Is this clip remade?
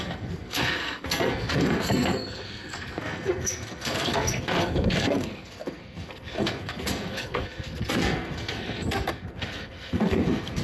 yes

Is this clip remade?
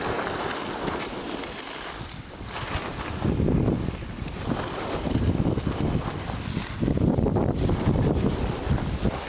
no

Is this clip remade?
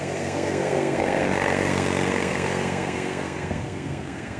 yes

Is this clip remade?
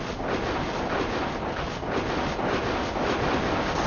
no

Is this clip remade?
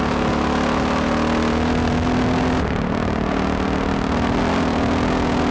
no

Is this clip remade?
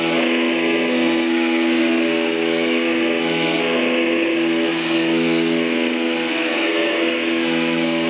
yes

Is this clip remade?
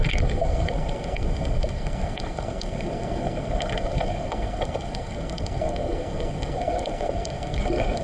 yes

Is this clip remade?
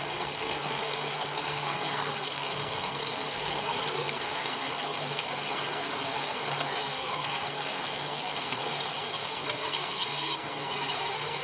yes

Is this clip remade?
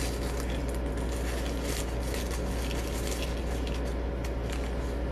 no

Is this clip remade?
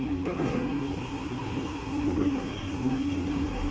yes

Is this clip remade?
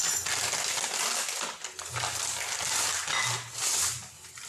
no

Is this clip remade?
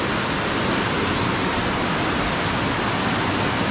no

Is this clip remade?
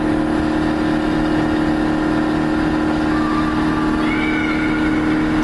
no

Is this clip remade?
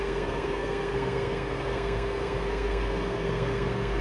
yes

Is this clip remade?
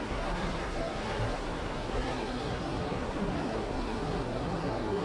yes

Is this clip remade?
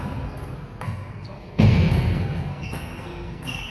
yes